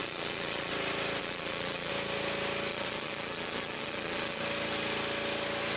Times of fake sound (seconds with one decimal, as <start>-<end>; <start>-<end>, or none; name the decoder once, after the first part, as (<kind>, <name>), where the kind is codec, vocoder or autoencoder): 0.0-0.7 (vocoder, Vocos); 1.2-1.9; 2.7-4.4